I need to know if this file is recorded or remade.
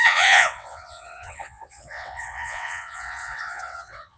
remade